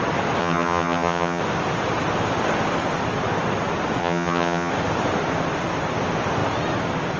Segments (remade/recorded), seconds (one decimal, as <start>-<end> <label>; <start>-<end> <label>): 0.0-0.4 recorded; 0.4-1.4 remade; 1.4-4.0 recorded; 4.0-4.7 remade; 4.7-7.2 recorded